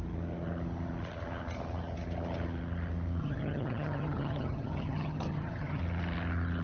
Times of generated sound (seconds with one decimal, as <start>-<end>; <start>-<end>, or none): 3.2-5.8

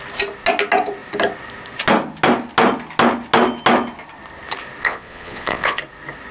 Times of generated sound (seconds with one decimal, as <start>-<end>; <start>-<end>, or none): 4.8-5.8

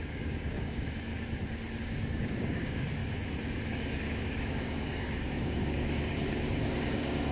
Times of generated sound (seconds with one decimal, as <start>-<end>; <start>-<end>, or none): 0.0-1.1; 1.8-3.0; 3.7-7.3

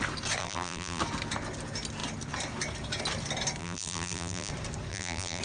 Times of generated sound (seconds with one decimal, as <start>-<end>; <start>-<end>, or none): 0.4-1.0; 3.6-4.5; 4.9-5.4

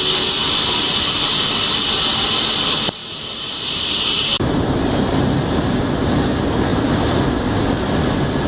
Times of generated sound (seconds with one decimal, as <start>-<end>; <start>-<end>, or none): 3.0-5.8; 6.7-7.2

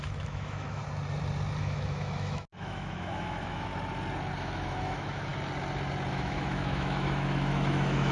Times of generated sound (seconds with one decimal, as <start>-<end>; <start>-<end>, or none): 0.0-0.8; 1.6-3.7; 4.4-5.3; 6.1-8.1